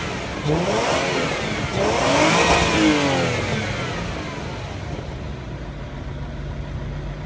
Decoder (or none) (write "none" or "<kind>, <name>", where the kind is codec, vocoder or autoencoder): none